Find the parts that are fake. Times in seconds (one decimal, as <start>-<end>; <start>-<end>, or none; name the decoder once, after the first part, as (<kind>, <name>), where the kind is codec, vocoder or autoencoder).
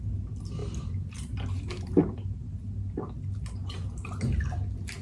0.6-2.0 (vocoder, BigVGAN v2); 3.6-4.2